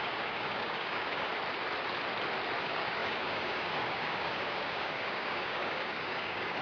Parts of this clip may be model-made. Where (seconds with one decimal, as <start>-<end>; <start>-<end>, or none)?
0.0-1.3; 2.6-6.6